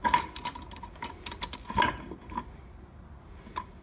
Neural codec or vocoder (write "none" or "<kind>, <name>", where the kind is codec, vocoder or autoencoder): none